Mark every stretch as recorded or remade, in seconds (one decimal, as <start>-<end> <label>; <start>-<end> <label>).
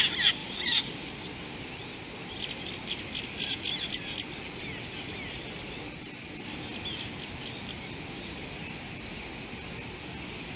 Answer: 0.0-0.4 recorded; 0.4-2.7 remade; 2.7-10.6 recorded